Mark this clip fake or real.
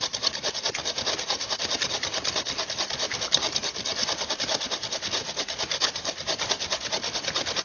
fake